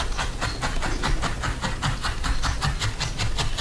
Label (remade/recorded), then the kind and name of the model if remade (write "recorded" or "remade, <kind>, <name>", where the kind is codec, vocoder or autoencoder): recorded